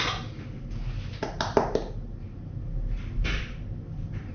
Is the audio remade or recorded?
recorded